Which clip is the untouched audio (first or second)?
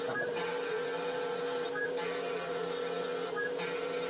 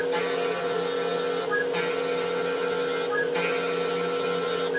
second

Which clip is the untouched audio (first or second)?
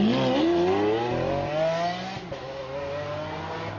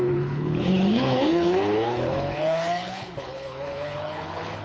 first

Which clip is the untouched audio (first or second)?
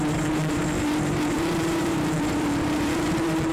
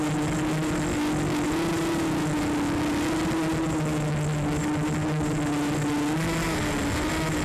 second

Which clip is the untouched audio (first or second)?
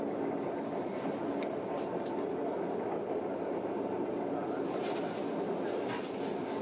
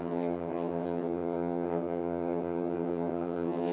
first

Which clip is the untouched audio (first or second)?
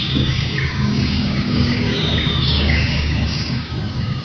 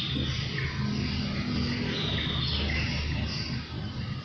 second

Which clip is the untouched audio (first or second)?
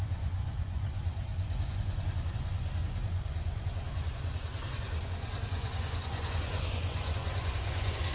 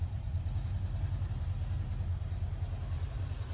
second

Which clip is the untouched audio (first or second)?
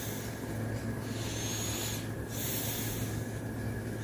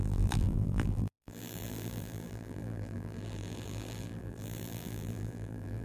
first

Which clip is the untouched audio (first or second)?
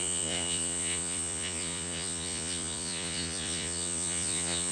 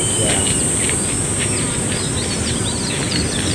second